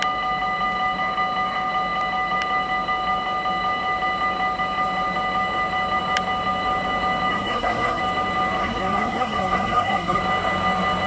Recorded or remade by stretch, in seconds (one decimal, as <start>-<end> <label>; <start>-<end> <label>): 0.0-7.3 recorded; 7.3-8.0 remade; 8.0-8.6 recorded; 8.6-10.2 remade; 10.2-11.1 recorded